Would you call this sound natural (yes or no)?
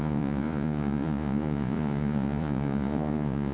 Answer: no